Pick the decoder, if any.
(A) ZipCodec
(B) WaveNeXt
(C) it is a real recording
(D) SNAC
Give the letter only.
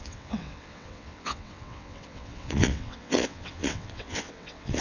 B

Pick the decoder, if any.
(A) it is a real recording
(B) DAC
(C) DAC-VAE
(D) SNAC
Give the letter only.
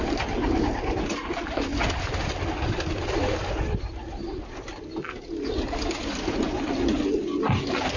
A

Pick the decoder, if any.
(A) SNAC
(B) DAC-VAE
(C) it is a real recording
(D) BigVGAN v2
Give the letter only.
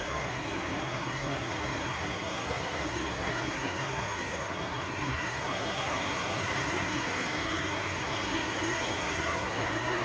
A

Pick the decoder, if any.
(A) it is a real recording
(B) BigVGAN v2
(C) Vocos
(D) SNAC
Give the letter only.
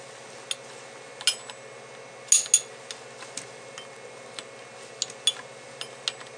A